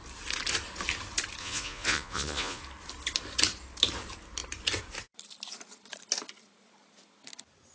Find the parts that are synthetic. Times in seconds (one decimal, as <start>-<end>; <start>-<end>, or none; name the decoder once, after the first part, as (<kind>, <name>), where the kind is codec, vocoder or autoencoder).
1.4-2.6 (vocoder, Vocos)